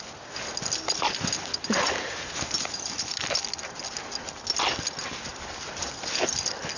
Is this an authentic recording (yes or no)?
yes